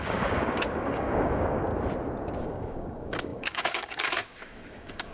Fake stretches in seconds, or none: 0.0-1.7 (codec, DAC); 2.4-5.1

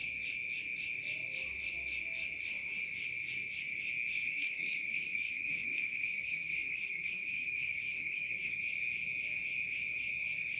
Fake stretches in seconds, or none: 4.1-8.6 (codec, SNAC)

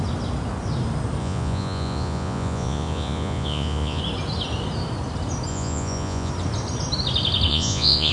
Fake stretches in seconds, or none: 1.2-4.0 (vocoder, Vocos); 5.5-6.3; 7.5-8.1

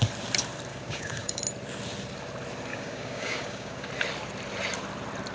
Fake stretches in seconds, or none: 0.7-1.4 (codec, DAC); 2.7-3.9

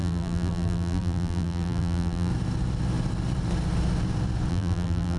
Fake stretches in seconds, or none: 0.0-2.3 (vocoder, BigVGAN v2); 4.5-5.2